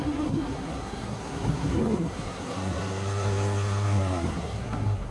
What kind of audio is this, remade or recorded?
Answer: remade